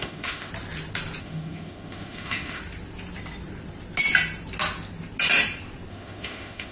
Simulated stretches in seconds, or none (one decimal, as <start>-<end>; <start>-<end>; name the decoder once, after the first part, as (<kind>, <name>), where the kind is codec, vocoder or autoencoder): 0.0-0.5 (autoencoder, DAC-VAE); 1.2-2.6; 5.9-6.7